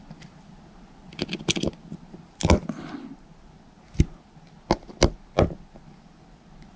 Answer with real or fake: real